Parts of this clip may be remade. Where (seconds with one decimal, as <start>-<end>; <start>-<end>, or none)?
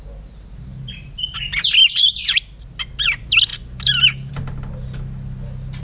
0.7-1.4; 1.8-2.4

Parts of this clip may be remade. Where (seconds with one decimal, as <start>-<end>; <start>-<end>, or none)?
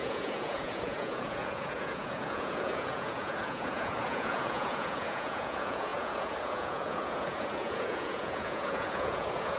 0.0-9.6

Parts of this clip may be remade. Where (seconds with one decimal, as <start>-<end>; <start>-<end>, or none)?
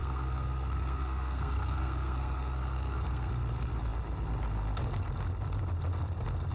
0.0-3.3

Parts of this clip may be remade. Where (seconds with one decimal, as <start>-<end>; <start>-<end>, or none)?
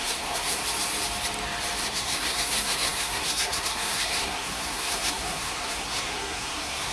0.0-0.6; 1.8-6.9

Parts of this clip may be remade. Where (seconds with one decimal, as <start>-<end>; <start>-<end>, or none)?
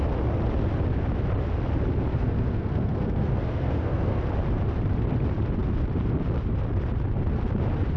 2.1-4.2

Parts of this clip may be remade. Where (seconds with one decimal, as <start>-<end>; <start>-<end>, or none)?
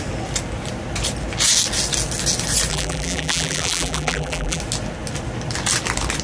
2.7-4.6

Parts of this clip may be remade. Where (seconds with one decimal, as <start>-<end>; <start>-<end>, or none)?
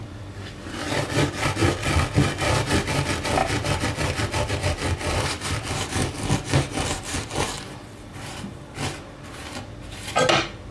none